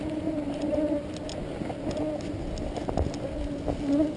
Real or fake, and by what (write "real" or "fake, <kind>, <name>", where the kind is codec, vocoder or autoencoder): real